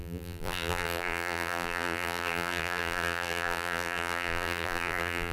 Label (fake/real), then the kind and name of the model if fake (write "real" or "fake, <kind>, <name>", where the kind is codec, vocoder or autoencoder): fake, vocoder, BigVGAN v2